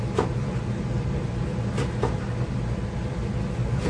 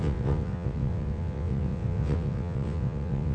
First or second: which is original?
first